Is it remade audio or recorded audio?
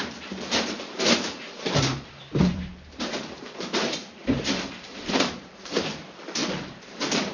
remade